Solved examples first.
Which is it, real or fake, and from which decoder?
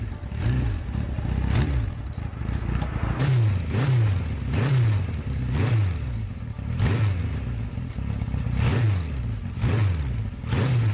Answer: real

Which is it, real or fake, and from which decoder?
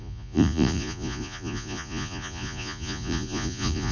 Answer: fake, vocoder, Vocos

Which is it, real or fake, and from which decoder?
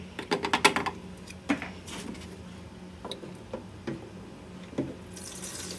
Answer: real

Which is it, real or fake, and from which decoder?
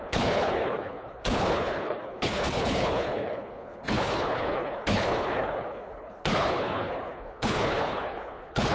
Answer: fake, codec, HILCodec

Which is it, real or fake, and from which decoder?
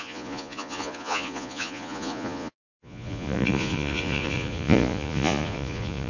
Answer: fake, vocoder, Vocos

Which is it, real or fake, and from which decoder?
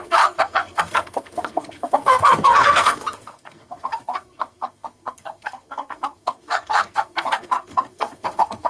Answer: fake, codec, SNAC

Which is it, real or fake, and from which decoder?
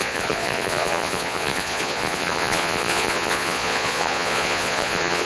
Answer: fake, vocoder, Vocos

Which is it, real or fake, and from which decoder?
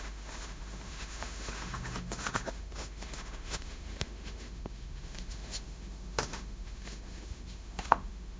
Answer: fake, autoencoder, DAC-VAE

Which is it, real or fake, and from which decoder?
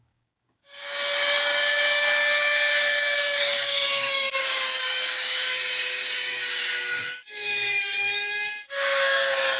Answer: fake, codec, DAC